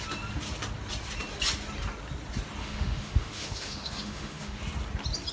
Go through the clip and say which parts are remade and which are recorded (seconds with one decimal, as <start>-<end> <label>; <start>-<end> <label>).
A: 0.0-2.6 recorded; 2.6-4.6 remade; 4.6-5.3 recorded